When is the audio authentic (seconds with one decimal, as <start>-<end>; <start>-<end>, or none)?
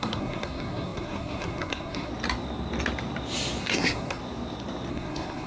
2.1-3.6; 4.2-4.9